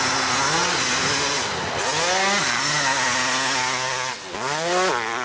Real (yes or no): yes